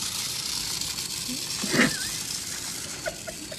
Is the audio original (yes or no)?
yes